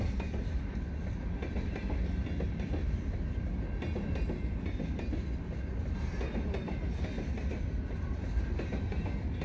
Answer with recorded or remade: recorded